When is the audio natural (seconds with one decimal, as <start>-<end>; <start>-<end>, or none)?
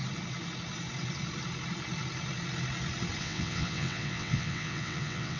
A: 0.0-3.2